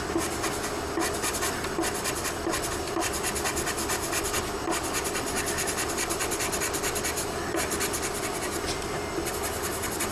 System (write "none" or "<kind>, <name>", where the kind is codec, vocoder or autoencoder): none